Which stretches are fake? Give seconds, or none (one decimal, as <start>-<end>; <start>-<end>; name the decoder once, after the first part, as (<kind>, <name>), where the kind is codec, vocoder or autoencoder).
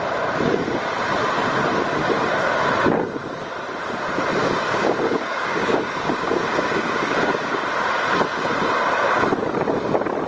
4.4-7.6 (codec, DAC)